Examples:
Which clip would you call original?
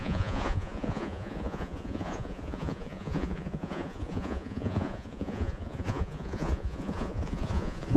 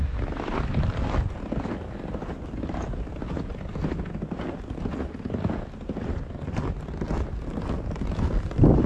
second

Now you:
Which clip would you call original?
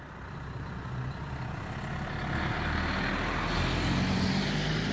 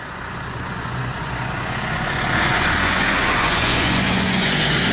first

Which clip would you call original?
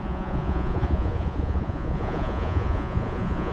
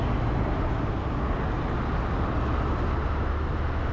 second